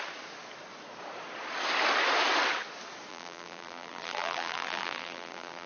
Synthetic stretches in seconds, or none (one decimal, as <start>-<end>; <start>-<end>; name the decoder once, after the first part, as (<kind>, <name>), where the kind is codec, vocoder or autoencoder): 3.1-5.7 (vocoder, BigVGAN v2)